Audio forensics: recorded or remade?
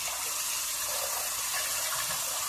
recorded